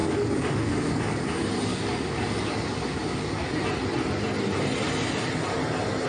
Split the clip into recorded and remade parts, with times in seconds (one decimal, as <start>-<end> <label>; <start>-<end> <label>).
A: 0.0-1.2 remade; 1.2-1.7 recorded; 1.7-3.5 remade; 3.5-6.1 recorded